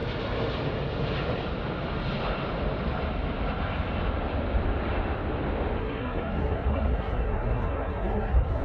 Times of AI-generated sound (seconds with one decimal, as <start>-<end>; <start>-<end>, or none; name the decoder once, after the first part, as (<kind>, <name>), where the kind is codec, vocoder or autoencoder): 5.8-8.6 (codec, SNAC)

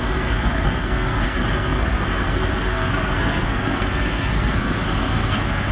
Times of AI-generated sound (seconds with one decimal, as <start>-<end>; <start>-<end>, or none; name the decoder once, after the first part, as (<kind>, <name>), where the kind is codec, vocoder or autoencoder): 0.0-5.7 (codec, SNAC)

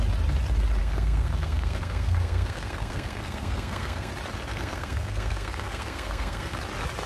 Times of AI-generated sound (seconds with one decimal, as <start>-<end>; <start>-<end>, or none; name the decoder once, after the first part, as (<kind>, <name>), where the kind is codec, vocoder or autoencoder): 0.8-4.1 (codec, SNAC); 4.5-6.6

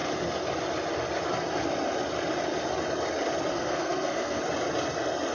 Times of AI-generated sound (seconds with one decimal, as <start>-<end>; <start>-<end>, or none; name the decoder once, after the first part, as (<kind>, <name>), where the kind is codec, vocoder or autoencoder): 3.5-4.4 (codec, SNAC)

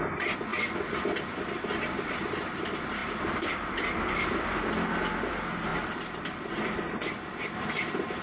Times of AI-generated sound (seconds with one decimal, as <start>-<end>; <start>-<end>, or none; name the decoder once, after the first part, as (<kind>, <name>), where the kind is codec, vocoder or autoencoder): none

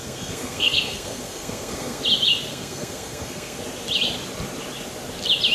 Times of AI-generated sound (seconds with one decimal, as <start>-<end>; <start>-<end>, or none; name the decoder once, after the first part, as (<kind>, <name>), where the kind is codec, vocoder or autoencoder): 0.0-2.0 (codec, SNAC); 2.5-3.6

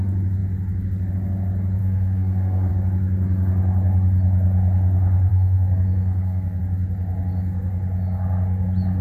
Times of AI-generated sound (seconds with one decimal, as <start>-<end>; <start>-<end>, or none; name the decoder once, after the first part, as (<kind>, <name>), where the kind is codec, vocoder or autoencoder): 1.8-2.7 (codec, SNAC); 5.3-6.6

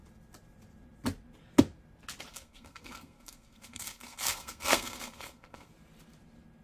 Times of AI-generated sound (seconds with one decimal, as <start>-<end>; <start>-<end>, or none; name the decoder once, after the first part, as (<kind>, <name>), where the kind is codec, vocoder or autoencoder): 2.3-5.7 (codec, SNAC)